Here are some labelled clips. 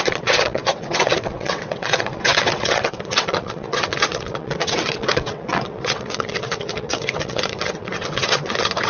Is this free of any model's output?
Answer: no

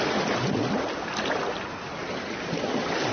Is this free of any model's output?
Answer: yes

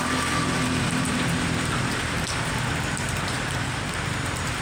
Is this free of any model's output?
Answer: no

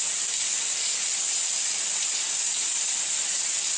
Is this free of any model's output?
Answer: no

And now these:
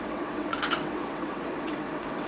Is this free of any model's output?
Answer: no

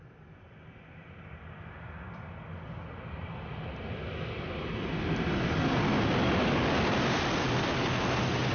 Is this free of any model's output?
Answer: yes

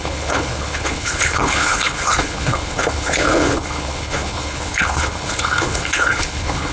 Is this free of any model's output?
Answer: no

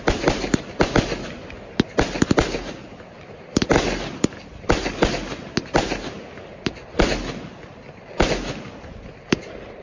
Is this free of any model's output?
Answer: yes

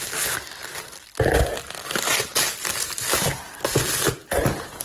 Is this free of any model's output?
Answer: yes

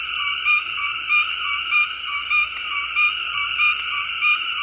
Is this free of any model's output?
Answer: yes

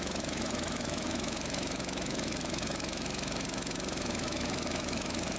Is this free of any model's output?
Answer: no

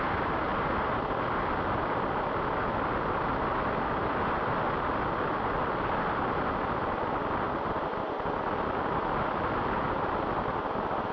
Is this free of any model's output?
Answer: yes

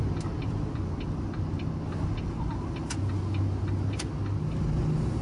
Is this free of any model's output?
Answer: yes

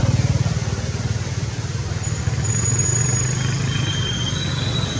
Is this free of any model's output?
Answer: yes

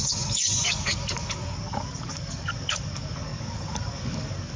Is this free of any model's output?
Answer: no